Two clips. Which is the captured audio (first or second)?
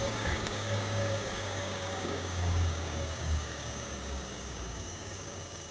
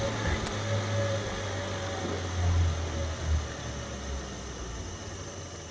second